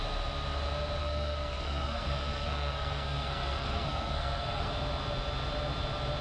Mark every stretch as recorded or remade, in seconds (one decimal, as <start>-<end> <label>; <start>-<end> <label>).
0.0-1.0 recorded; 1.0-4.7 remade; 4.7-6.2 recorded